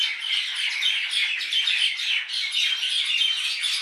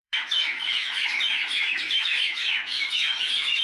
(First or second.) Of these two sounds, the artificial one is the second